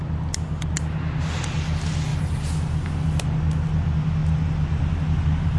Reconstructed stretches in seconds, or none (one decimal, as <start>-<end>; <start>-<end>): none